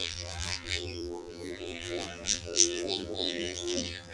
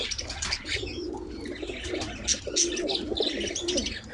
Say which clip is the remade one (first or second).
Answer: first